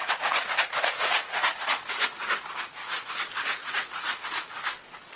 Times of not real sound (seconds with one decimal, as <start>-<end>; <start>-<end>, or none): 0.0-3.1; 3.6-4.2